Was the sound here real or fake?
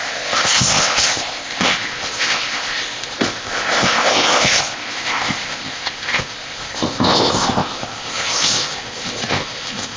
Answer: fake